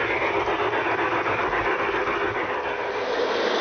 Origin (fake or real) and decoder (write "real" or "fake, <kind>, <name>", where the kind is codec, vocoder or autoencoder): real